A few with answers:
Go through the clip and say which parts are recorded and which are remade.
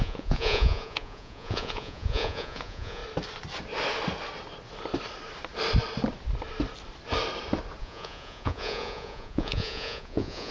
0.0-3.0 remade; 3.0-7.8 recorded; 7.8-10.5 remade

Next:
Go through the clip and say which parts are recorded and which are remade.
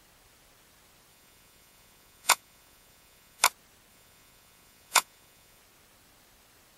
0.0-1.1 recorded; 1.1-3.4 remade; 3.4-3.9 recorded; 3.9-5.6 remade; 5.6-6.8 recorded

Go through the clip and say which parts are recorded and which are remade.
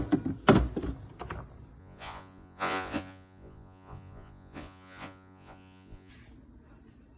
0.0-1.8 recorded; 1.8-6.1 remade; 6.1-7.2 recorded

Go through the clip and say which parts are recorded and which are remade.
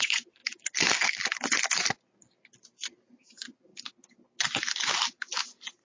0.0-0.4 remade; 0.4-3.2 recorded; 3.2-3.7 remade; 3.7-5.8 recorded